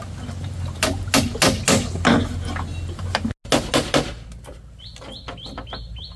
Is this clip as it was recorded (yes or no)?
yes